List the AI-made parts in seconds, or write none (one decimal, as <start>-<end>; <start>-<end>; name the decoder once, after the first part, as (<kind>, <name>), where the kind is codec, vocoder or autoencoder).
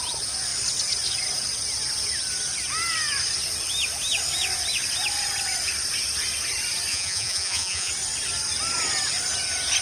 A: 6.9-7.9 (vocoder, Vocos)